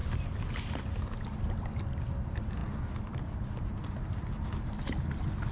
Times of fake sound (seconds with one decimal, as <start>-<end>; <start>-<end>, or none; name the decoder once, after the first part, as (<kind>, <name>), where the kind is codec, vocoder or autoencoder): none